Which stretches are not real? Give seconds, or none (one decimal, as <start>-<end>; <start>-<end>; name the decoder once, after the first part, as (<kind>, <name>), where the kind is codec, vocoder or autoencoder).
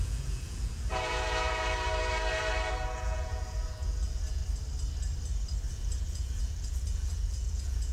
0.0-1.6 (vocoder, Vocos); 2.7-4.4; 5.7-7.9